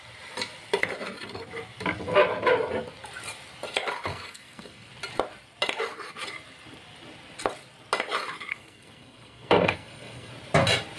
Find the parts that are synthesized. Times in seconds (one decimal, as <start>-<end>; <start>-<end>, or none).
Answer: 4.1-4.9; 8.5-10.3